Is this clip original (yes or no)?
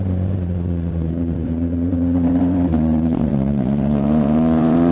no